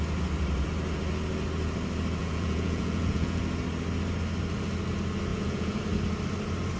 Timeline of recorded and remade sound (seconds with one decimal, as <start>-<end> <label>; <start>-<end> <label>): 0.0-2.2 recorded; 2.2-3.4 remade; 3.4-5.3 recorded; 5.3-5.8 remade; 5.8-6.8 recorded

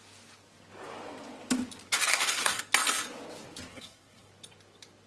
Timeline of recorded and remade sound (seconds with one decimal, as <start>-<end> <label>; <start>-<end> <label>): 0.0-2.1 recorded; 2.1-2.6 remade; 2.6-3.7 recorded; 3.7-4.3 remade; 4.3-5.1 recorded